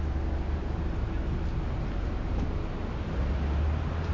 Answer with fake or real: real